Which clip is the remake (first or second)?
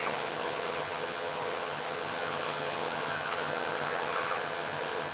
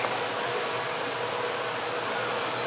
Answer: first